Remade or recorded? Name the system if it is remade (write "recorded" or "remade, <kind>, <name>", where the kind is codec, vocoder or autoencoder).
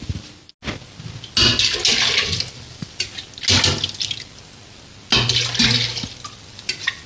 recorded